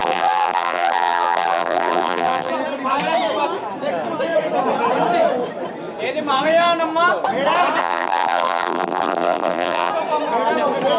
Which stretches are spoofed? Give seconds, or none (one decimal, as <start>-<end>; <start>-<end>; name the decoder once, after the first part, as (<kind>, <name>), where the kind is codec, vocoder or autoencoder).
0.0-2.5 (vocoder, BigVGAN v2); 7.8-9.9